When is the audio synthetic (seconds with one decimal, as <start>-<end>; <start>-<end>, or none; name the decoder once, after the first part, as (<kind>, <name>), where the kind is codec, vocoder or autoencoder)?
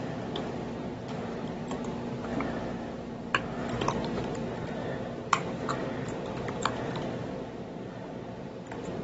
1.1-5.7 (vocoder, BigVGAN v2)